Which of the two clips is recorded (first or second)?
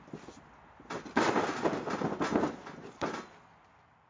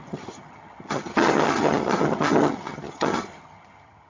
first